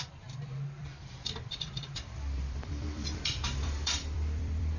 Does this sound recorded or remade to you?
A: remade